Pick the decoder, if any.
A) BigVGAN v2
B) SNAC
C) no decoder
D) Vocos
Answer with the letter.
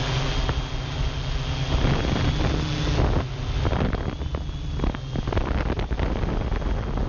C